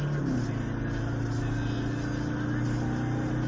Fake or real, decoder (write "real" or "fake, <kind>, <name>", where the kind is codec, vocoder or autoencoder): real